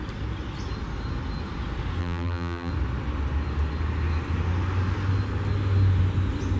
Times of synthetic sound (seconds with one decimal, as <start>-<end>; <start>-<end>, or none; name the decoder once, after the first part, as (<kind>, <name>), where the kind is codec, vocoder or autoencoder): 2.0-2.7 (vocoder, BigVGAN v2)